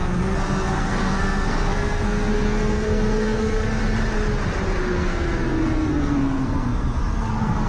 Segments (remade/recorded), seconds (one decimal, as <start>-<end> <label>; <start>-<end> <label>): 0.0-3.8 remade; 3.8-4.8 recorded; 4.8-7.7 remade